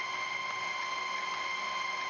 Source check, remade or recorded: recorded